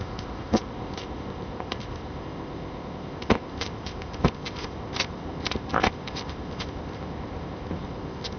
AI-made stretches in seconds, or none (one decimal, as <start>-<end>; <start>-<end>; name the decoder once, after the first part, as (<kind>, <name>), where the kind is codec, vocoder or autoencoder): 0.0-8.4 (codec, ZipCodec)